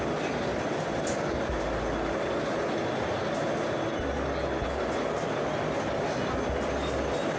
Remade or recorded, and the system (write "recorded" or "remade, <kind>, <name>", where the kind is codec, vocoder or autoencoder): recorded